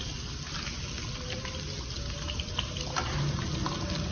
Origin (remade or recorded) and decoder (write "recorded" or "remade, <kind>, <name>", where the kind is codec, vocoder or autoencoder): recorded